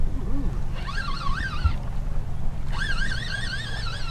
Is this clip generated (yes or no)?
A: no